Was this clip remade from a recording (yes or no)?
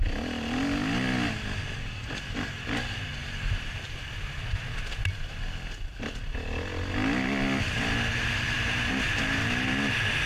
no